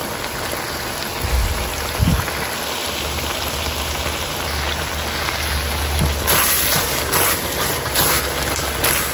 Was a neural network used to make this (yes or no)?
no